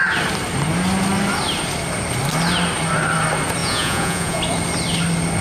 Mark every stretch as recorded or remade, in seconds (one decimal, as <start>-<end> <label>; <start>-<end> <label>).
0.0-3.6 recorded; 3.6-4.4 remade; 4.4-5.4 recorded